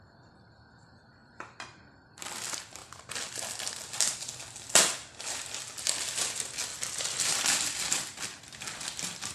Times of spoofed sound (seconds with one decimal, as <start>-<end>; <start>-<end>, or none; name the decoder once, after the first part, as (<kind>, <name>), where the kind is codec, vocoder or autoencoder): 1.2-2.1 (vocoder, BigVGAN v2); 6.7-8.2